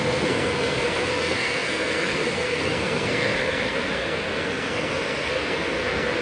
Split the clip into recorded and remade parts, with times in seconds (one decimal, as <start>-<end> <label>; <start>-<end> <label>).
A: 0.0-6.2 remade